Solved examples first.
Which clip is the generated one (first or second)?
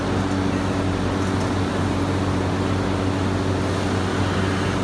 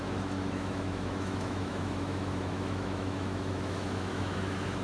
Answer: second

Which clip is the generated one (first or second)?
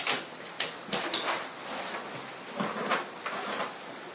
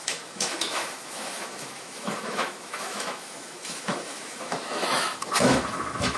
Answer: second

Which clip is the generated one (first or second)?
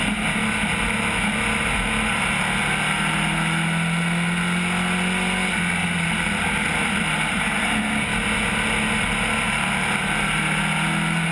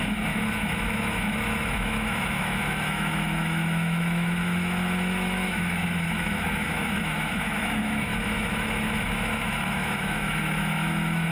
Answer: second